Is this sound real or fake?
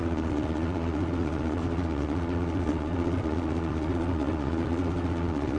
fake